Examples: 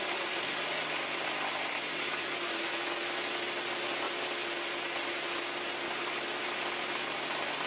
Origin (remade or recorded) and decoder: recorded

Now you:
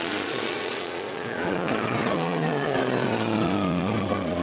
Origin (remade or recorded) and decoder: remade, vocoder, Vocos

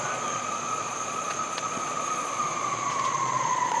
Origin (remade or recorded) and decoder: remade, vocoder, Vocos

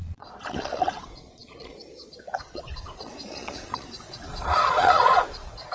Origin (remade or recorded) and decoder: remade, vocoder, Vocos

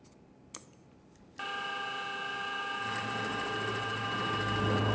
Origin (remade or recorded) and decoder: recorded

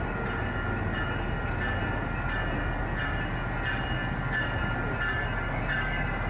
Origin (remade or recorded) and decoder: recorded